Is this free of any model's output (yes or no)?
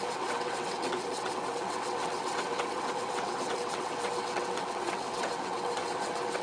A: no